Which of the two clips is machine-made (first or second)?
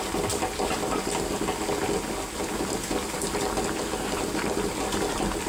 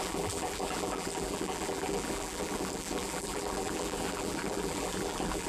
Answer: second